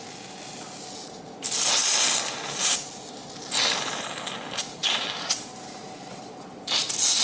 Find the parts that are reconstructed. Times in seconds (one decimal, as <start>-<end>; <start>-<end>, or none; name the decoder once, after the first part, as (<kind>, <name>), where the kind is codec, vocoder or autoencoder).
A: 4.8-6.2 (vocoder, BigVGAN v2)